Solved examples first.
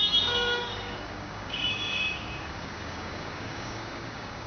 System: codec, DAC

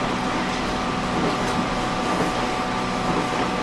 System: none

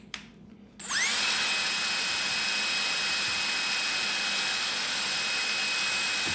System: none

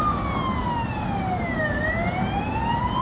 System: none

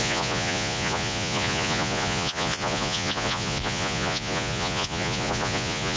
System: vocoder, Vocos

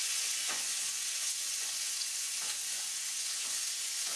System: vocoder, Vocos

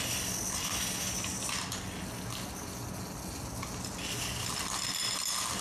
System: none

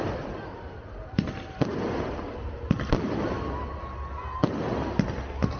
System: none